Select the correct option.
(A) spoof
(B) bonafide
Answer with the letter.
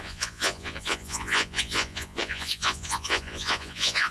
A